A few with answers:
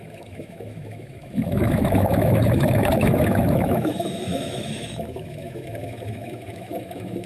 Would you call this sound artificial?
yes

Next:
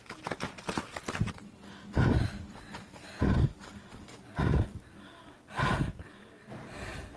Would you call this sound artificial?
no